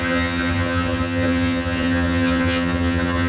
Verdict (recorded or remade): remade